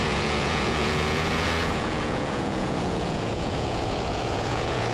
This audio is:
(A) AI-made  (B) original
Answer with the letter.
A